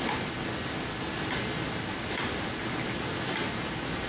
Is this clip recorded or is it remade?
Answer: recorded